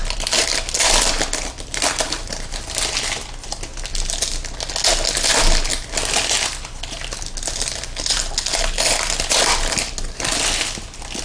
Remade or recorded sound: recorded